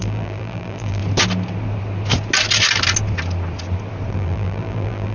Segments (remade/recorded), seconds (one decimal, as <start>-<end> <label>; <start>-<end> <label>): 0.0-1.0 remade; 1.0-4.1 recorded; 4.1-5.1 remade